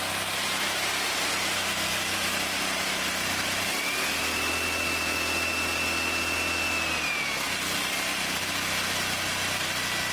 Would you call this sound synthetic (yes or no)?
no